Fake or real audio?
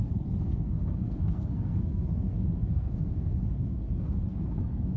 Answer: fake